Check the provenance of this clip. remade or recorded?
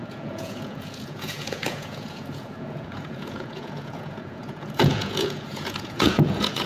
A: remade